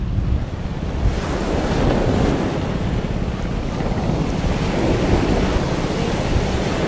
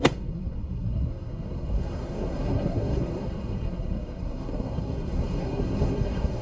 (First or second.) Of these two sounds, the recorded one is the first